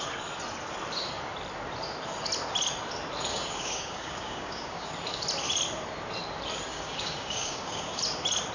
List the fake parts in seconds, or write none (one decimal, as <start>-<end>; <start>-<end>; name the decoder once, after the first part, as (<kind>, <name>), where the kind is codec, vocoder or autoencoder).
3.3-4.9 (codec, DAC); 6.7-8.0

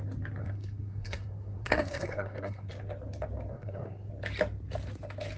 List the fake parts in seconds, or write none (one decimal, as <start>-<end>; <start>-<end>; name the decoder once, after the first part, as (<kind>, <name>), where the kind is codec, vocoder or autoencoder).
0.4-2.7 (codec, SNAC); 3.5-4.1